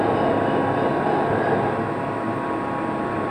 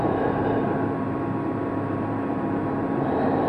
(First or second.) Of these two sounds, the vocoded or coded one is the second